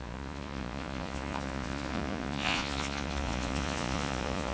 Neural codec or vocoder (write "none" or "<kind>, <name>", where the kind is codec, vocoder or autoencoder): vocoder, Vocos